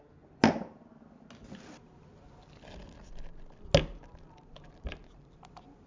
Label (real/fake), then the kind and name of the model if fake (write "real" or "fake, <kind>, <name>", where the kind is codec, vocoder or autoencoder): real